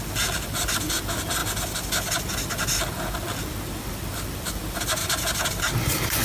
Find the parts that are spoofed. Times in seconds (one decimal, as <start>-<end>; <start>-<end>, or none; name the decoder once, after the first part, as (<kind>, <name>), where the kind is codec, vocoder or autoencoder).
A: 5.0-5.6 (vocoder, BigVGAN v2)